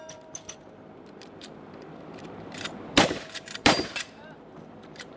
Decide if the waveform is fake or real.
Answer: fake